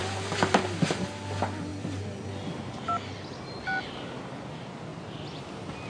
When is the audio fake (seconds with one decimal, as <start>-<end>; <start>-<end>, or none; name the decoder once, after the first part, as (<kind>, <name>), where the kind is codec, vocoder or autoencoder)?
none